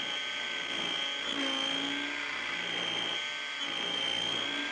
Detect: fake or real real